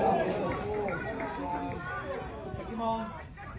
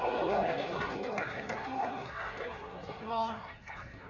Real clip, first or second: first